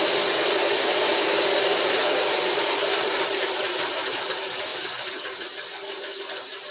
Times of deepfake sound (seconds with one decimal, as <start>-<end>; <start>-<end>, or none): none